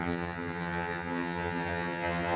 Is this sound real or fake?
fake